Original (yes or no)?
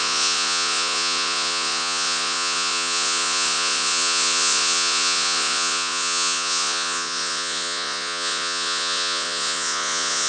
no